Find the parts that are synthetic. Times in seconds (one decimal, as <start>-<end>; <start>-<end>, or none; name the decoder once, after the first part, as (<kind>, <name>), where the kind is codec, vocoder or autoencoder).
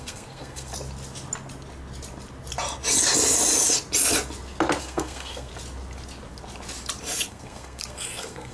0.0-0.7 (codec, SNAC); 4.8-5.5; 7.3-8.5